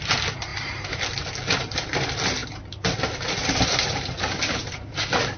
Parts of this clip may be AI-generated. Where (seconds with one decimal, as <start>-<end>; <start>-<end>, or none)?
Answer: 0.5-1.0; 2.4-4.9